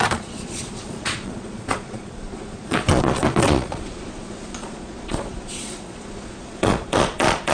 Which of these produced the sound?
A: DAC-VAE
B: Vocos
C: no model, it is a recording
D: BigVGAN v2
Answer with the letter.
B